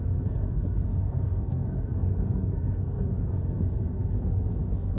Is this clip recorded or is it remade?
remade